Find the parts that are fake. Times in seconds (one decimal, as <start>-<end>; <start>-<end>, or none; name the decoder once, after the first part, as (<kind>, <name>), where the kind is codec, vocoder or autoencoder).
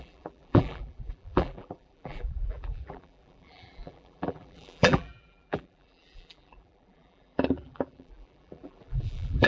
0.0-9.5 (vocoder, BigVGAN v2)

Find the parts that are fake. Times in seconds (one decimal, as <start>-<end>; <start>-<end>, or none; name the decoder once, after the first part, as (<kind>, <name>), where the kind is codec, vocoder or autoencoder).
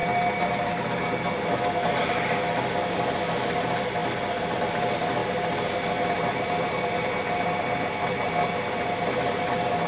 5.2-7.1 (vocoder, BigVGAN v2)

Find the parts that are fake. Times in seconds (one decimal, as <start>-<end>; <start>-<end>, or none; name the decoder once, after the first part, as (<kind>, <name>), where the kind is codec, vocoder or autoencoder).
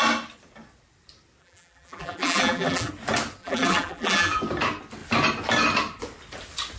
1.4-2.9 (vocoder, BigVGAN v2); 3.4-4.4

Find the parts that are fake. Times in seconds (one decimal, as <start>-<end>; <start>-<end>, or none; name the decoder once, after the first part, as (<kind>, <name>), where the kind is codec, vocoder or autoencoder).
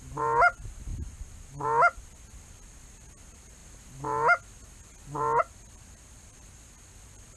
none